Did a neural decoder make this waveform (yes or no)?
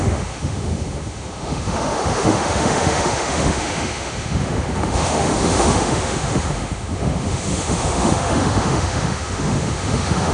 yes